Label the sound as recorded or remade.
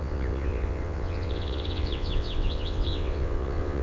remade